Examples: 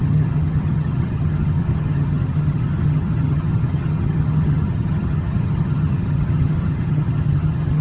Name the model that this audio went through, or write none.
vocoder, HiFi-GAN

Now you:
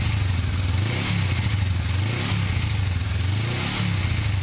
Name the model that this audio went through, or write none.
none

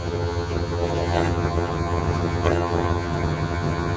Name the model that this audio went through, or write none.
vocoder, HiFi-GAN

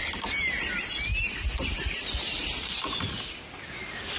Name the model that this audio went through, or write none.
none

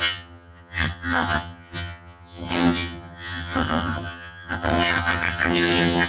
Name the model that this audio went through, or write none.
vocoder, HiFi-GAN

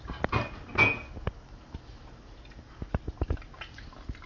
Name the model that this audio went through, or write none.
none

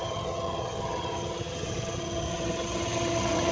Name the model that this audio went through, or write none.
vocoder, HiFi-GAN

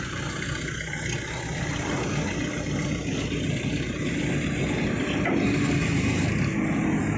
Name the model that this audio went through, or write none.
none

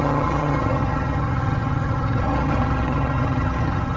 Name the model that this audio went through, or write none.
vocoder, HiFi-GAN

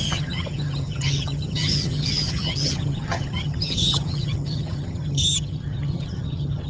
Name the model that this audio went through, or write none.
vocoder, HiFi-GAN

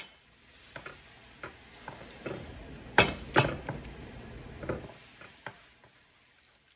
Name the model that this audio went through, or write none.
none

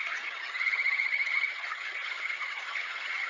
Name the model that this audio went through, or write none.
vocoder, HiFi-GAN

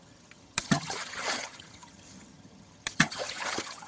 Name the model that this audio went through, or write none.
vocoder, HiFi-GAN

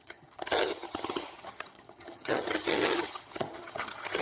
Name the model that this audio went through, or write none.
vocoder, HiFi-GAN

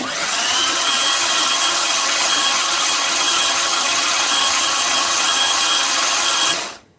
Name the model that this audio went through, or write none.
vocoder, HiFi-GAN